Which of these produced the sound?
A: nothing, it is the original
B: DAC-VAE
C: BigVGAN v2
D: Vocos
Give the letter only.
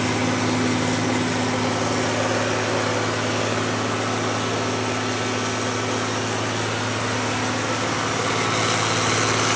A